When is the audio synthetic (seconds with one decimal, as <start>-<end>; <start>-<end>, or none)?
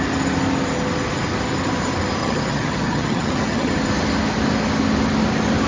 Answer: 2.2-3.7